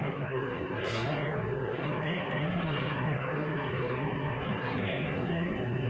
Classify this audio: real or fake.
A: fake